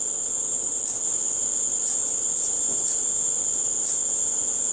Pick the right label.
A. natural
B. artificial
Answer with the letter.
A